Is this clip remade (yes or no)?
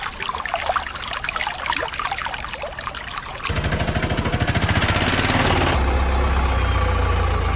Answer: no